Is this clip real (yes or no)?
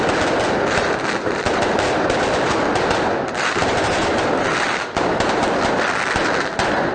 yes